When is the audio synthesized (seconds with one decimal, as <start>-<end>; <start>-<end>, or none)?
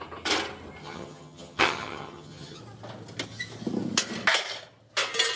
0.8-2.6